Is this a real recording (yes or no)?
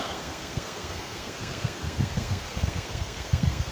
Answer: no